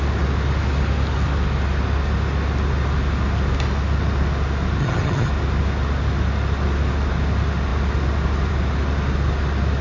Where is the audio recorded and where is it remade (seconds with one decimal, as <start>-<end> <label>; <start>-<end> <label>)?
0.0-4.8 recorded; 4.8-5.3 remade; 5.3-9.8 recorded